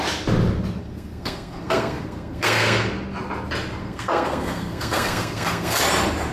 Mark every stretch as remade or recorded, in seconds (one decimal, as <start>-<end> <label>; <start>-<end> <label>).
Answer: 0.0-0.8 recorded; 0.8-2.9 remade; 2.9-3.8 recorded; 3.8-5.8 remade; 5.8-6.3 recorded